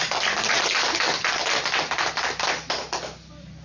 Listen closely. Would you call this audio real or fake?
real